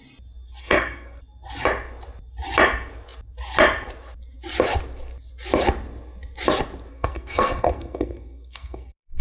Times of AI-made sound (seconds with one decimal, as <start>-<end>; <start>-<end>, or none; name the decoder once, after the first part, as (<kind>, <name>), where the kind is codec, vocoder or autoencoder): 0.6-1.2 (codec, SNAC); 6.9-9.2